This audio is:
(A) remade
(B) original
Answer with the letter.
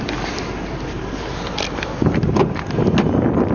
B